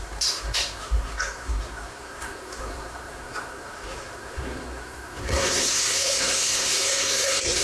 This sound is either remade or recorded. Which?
remade